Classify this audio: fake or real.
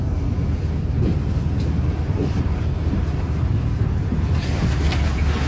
real